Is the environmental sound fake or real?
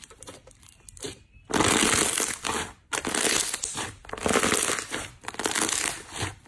real